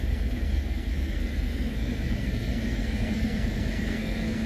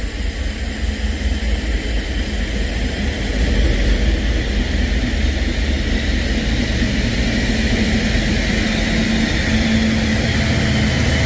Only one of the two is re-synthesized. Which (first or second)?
first